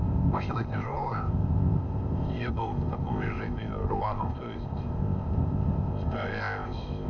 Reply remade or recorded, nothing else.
remade